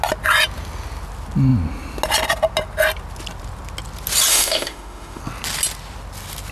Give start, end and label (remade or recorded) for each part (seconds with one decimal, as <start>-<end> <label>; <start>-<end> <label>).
0.0-4.3 recorded; 4.3-5.2 remade; 5.2-6.5 recorded